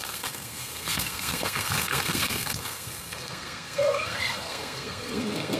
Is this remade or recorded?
remade